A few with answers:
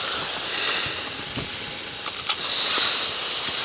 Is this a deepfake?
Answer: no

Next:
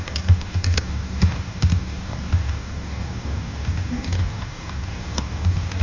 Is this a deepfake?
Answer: yes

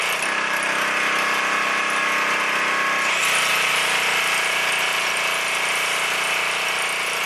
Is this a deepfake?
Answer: no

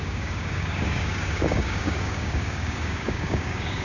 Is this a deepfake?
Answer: yes